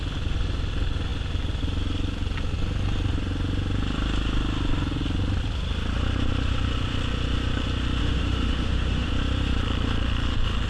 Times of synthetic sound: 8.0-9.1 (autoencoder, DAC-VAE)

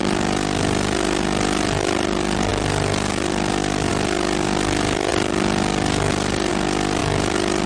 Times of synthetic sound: none

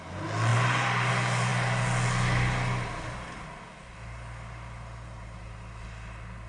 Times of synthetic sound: none

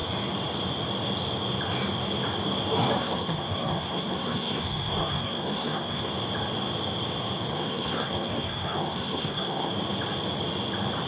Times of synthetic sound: 3.0-6.1 (codec, SNAC); 7.5-9.7

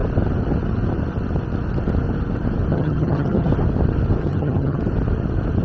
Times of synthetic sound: 2.7-3.5 (vocoder, HiFi-GAN); 4.2-4.8

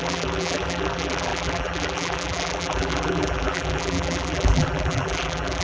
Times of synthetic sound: 0.0-5.6 (vocoder, BigVGAN v2)

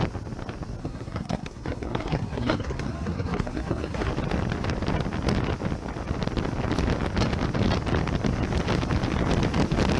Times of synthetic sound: 0.8-4.1 (codec, SNAC)

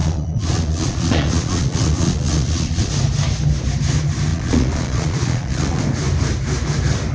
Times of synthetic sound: 0.0-2.9 (vocoder, Vocos); 4.3-5.8